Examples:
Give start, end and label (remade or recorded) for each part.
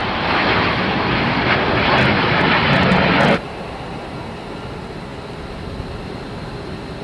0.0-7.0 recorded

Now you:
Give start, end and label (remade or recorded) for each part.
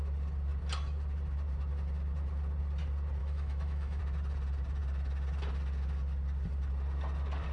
0.0-3.2 recorded; 3.2-4.0 remade; 4.0-7.5 recorded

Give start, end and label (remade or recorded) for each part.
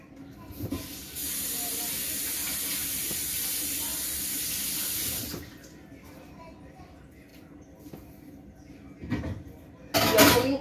0.0-10.6 recorded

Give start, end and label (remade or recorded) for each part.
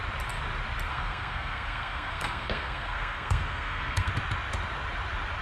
0.0-0.9 recorded; 0.9-4.1 remade; 4.1-5.4 recorded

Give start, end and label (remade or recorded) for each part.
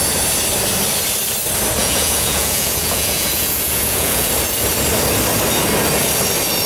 0.0-1.8 recorded; 1.8-4.3 remade; 4.3-6.7 recorded